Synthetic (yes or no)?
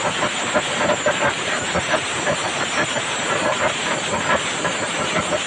no